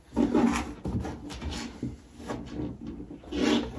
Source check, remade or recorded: recorded